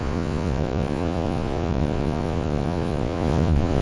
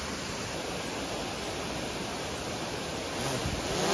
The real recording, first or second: second